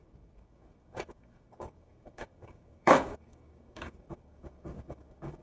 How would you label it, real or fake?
fake